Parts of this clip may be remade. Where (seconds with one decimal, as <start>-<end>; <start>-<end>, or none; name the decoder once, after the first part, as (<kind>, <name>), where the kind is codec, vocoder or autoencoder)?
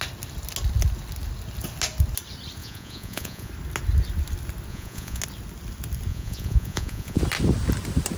2.6-3.5 (vocoder, Vocos); 4.7-5.2; 6.1-7.2